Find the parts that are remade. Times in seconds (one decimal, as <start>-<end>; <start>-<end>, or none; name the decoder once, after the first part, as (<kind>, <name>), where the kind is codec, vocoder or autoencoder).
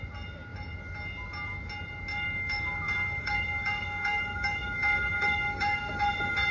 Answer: 2.1-6.0 (codec, DAC)